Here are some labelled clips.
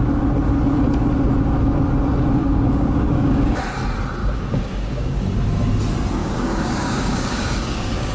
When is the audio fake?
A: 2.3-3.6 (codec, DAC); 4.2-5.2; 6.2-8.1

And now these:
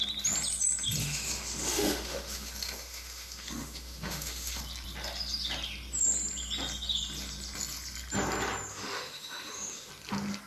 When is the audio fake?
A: 1.0-4.6 (autoencoder, DAC-VAE); 8.7-9.9

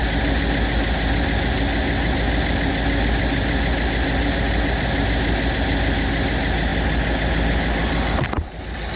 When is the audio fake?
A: none

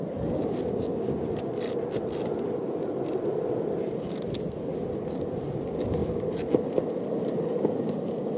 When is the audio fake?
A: none

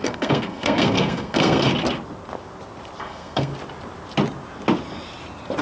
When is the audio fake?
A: 0.0-1.7 (codec, SNAC); 3.0-3.5

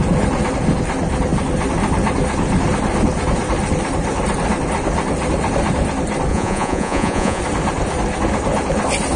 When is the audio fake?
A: 6.3-7.4 (vocoder, Vocos)

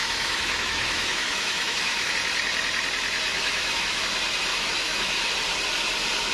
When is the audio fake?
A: 0.0-2.1 (autoencoder, DAC-VAE); 3.3-4.0; 4.5-5.3

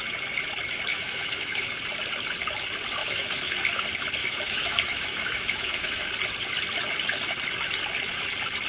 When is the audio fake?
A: 0.9-1.6 (autoencoder, DAC-VAE); 3.0-3.6; 4.2-6.1